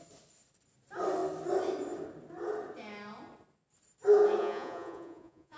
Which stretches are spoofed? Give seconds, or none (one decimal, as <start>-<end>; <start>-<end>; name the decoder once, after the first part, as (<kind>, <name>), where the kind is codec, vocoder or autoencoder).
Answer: 4.4-5.6 (vocoder, Vocos)